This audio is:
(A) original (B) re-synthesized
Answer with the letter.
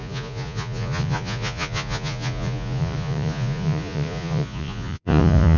B